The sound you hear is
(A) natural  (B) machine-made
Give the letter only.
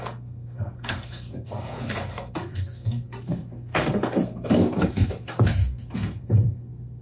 B